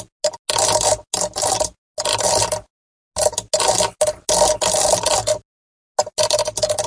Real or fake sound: real